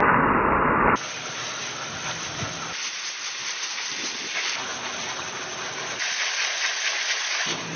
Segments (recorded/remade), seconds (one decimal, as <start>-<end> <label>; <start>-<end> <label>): 0.0-4.7 remade; 4.7-5.5 recorded; 5.5-7.8 remade